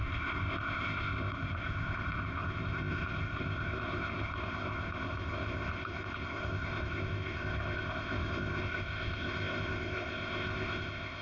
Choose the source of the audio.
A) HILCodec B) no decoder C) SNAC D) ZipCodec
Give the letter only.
D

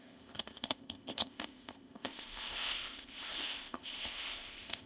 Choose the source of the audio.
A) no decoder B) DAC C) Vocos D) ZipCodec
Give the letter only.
D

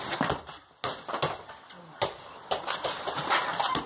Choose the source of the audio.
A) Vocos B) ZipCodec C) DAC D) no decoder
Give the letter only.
D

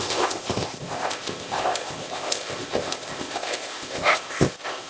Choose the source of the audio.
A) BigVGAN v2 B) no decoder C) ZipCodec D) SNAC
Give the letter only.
C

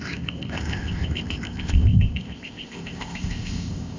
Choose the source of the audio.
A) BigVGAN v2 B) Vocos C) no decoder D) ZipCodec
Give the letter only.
D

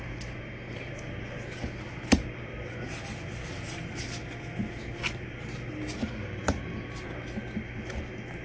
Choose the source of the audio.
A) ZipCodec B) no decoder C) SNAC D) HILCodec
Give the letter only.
B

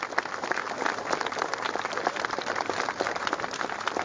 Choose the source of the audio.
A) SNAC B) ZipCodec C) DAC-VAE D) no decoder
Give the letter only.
D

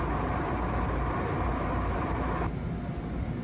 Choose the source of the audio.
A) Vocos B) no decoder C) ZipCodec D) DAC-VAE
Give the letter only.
B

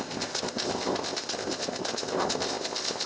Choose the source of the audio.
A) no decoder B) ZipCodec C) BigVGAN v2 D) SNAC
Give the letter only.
B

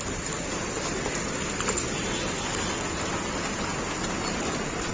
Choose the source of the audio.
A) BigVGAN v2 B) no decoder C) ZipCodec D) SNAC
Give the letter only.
B